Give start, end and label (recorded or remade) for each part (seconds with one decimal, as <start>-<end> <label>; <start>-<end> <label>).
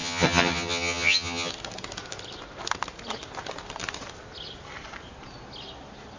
0.0-1.5 remade; 1.5-6.2 recorded